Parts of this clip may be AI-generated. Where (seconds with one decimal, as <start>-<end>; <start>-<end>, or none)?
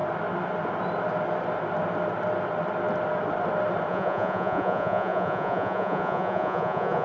3.9-7.0